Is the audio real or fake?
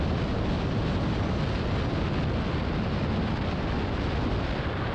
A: real